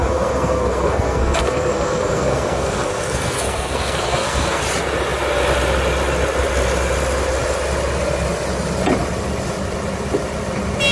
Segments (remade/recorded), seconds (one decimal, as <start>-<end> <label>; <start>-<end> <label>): 0.0-4.6 remade; 4.6-10.9 recorded

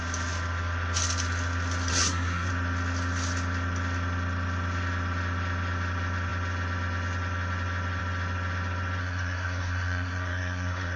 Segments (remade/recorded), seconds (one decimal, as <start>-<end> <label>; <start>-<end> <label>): 0.0-1.9 recorded; 1.9-2.5 remade; 2.5-9.0 recorded; 9.0-11.0 remade

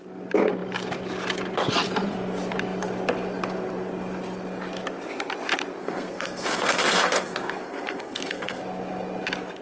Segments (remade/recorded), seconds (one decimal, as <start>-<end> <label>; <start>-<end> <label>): 0.0-5.8 recorded; 5.8-8.6 remade; 8.6-9.6 recorded

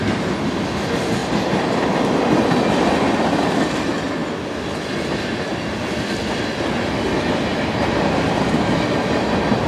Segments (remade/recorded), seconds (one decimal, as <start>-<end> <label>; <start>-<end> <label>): 0.0-9.7 recorded